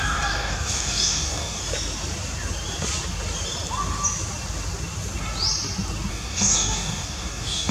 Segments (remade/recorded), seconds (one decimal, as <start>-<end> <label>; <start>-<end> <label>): 0.0-1.6 remade; 1.6-6.1 recorded; 6.1-7.7 remade